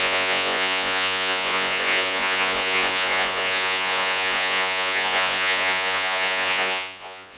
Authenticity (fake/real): fake